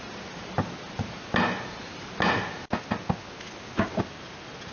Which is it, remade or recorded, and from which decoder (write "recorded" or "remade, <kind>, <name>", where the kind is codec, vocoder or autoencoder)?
recorded